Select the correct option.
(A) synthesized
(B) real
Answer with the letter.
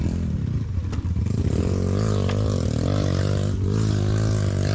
B